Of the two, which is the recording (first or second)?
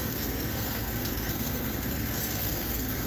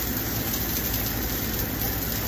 second